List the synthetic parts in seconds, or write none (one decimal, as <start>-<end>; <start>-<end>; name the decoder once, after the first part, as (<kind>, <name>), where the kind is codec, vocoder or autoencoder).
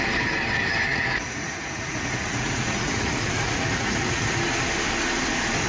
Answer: 0.9-4.3 (vocoder, Vocos)